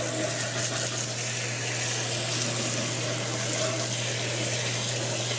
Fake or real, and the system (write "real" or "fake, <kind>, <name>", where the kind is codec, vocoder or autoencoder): real